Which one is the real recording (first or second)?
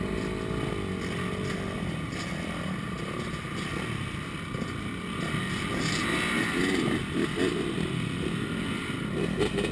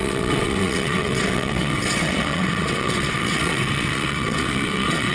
first